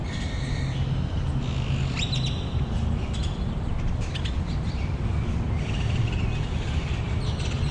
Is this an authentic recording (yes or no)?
yes